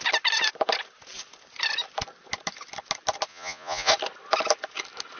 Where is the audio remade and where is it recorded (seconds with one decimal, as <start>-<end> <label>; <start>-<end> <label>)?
0.0-3.3 recorded; 3.3-3.9 remade; 3.9-5.2 recorded